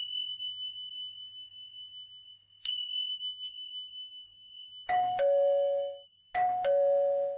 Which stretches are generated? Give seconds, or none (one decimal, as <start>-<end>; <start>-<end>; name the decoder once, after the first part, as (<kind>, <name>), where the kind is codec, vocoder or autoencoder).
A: 2.8-6.2 (autoencoder, DAC-VAE)